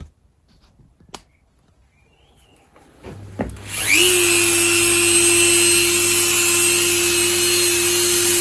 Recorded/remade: recorded